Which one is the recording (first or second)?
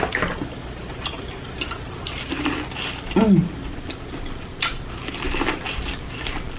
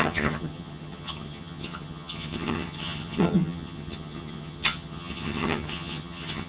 first